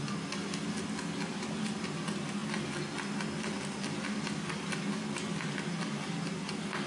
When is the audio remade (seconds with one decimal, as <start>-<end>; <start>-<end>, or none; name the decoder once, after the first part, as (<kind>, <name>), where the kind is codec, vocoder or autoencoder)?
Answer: none